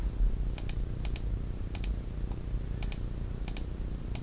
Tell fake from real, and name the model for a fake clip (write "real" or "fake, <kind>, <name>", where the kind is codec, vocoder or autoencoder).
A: real